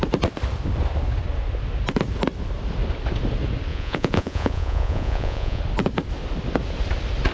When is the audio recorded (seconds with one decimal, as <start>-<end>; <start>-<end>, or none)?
0.0-3.7; 5.6-7.3